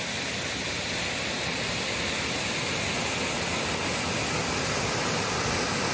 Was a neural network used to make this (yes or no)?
no